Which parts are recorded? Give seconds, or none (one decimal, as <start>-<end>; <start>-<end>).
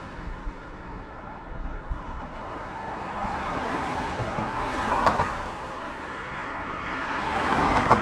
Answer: none